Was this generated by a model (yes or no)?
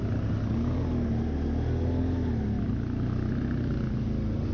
no